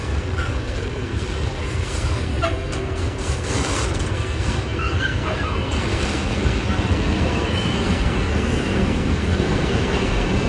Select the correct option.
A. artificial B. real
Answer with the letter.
A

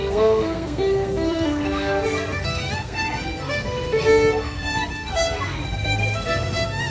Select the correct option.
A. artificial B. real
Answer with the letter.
A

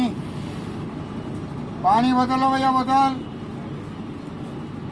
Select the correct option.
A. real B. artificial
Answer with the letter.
A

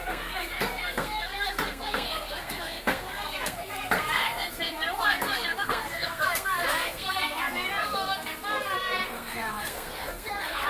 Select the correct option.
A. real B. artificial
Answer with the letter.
B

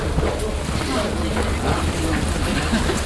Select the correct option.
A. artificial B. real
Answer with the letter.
B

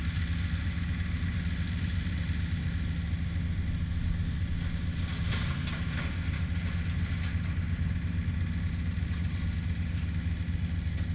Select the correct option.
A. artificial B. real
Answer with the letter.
B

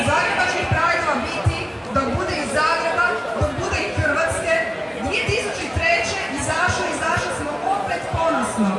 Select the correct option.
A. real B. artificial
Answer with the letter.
A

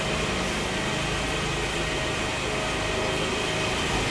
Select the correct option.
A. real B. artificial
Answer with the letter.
A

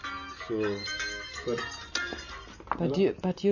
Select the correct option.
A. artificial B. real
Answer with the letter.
B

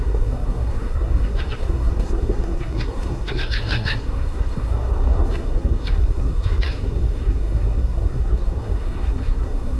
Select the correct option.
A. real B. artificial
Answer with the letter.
B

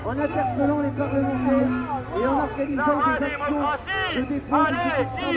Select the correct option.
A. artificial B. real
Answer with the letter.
B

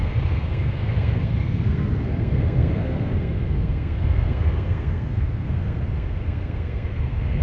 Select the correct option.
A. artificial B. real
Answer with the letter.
A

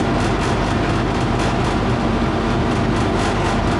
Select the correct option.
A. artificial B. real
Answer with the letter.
B